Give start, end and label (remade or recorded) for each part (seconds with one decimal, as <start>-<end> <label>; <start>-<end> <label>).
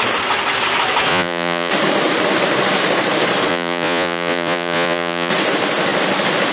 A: 0.0-1.1 recorded; 1.1-1.7 remade; 1.7-3.5 recorded; 3.5-5.3 remade; 5.3-6.5 recorded